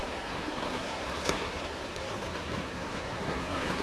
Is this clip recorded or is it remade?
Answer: remade